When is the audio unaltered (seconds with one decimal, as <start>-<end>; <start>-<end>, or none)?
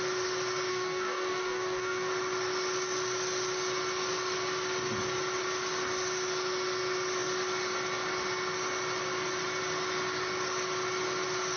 0.0-0.7; 2.1-11.6